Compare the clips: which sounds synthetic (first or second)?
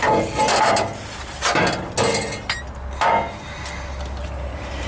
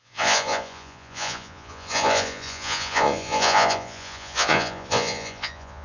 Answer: second